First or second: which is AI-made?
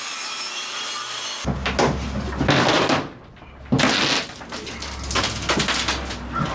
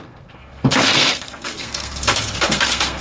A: second